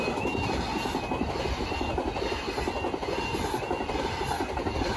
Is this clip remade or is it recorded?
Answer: recorded